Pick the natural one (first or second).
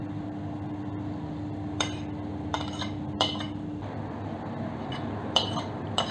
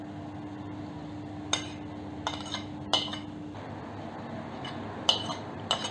second